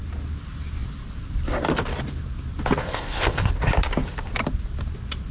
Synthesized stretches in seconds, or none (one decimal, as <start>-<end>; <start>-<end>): 2.8-3.5